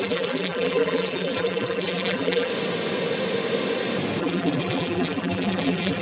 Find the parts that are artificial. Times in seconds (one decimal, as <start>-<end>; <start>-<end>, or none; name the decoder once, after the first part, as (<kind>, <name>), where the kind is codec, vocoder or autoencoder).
0.0-2.5 (vocoder, BigVGAN v2); 4.2-6.0